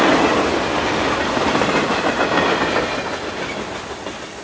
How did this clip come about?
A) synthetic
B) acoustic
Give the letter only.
B